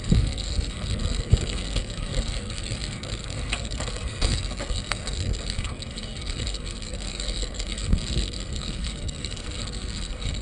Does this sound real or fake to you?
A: fake